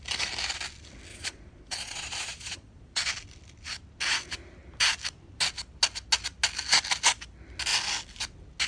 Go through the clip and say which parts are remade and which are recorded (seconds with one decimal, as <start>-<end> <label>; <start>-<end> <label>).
0.0-1.1 recorded; 1.1-3.1 remade; 3.1-8.7 recorded